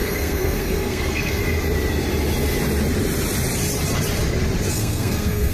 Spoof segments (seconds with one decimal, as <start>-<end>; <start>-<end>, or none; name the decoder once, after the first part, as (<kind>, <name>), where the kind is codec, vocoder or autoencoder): 0.0-1.4 (codec, SNAC); 4.7-5.5